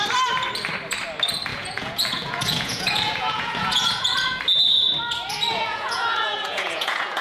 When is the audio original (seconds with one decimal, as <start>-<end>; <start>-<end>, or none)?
0.0-1.5; 4.4-5.5